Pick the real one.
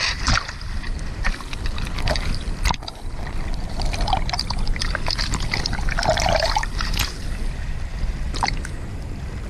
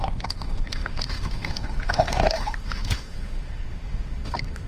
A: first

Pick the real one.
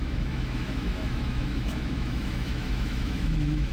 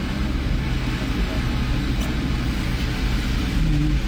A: second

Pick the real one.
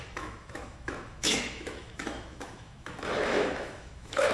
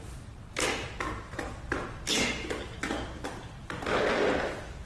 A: second